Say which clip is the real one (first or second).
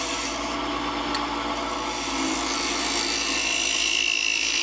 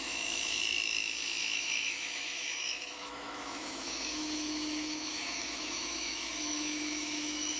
first